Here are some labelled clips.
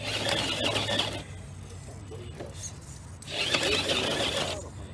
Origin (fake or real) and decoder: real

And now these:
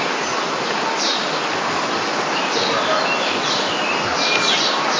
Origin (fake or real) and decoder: real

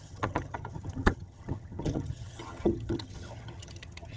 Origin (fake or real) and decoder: fake, vocoder, HiFi-GAN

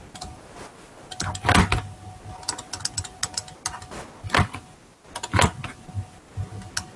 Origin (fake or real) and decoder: real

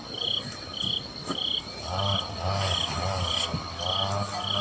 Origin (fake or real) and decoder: real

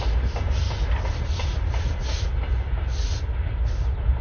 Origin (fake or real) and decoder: real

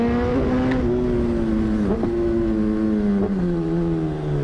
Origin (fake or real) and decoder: real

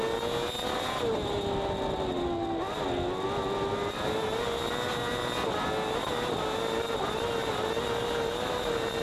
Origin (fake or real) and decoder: real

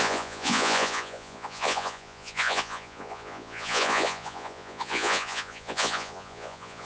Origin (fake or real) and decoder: fake, vocoder, Vocos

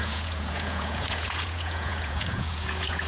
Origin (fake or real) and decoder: fake, vocoder, Vocos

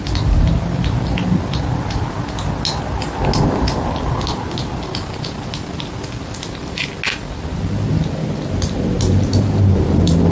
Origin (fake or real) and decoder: real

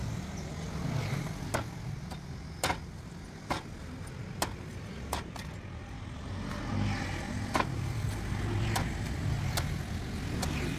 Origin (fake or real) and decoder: real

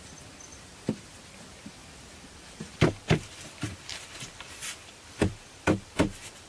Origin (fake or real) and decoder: fake, vocoder, BigVGAN v2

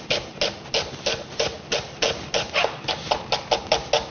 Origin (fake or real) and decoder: real